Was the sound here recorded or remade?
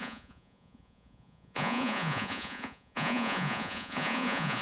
remade